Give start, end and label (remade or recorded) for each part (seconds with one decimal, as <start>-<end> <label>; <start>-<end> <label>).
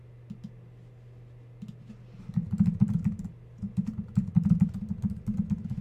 0.0-5.8 recorded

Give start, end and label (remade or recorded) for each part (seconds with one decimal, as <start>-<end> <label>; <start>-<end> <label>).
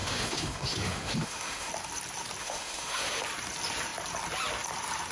0.0-1.7 remade; 1.7-2.4 recorded; 2.4-3.2 remade; 3.2-5.1 recorded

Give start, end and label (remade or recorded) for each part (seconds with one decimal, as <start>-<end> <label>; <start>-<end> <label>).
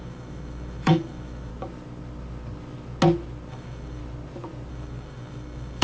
0.0-1.5 remade; 1.5-3.5 recorded; 3.5-4.0 remade; 4.0-4.7 recorded; 4.7-5.8 remade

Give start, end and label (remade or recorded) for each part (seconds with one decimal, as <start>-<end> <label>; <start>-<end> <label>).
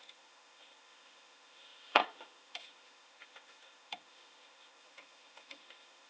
0.0-6.1 remade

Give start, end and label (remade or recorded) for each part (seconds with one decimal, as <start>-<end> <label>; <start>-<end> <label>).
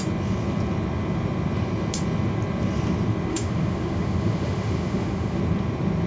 0.0-3.3 recorded; 3.3-5.4 remade; 5.4-6.1 recorded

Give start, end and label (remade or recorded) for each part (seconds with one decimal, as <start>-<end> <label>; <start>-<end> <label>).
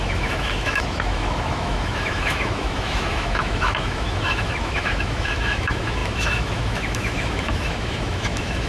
0.0-8.7 remade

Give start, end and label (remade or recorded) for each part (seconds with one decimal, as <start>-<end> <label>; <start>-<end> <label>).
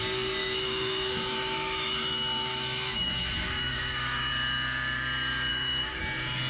0.0-0.4 recorded; 0.4-4.3 remade; 4.3-5.5 recorded; 5.5-6.0 remade; 6.0-6.5 recorded